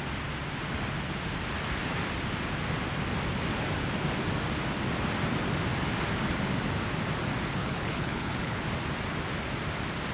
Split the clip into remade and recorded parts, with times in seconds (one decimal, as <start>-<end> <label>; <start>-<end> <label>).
0.0-7.6 recorded; 7.6-8.6 remade; 8.6-10.1 recorded